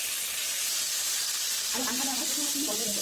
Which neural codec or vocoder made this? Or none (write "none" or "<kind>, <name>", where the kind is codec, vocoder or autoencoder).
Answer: none